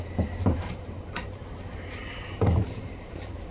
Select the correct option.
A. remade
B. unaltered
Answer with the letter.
A